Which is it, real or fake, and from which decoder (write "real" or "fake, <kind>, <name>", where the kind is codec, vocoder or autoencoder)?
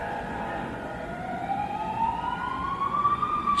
fake, vocoder, Vocos